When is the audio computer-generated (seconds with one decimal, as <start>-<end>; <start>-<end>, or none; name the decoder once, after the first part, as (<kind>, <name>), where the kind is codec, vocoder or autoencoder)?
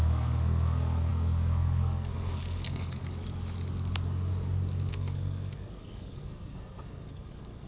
0.0-3.0 (codec, SNAC); 4.9-7.7